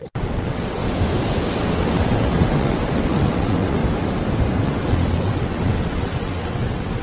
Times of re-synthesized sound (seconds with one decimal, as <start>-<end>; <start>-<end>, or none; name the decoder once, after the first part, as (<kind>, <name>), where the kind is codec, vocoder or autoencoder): 0.0-0.8 (vocoder, WaveNeXt); 1.5-3.8; 4.6-7.0